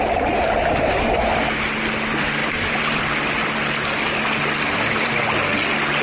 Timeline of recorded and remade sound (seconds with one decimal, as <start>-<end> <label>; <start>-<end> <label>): 0.0-2.4 recorded; 2.4-3.0 remade; 3.0-6.0 recorded